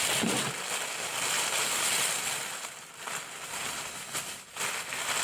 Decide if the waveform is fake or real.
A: real